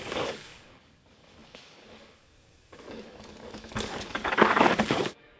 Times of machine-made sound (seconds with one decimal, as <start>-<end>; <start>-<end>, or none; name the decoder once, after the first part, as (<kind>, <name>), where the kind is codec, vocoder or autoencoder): 0.0-5.4 (codec, DAC)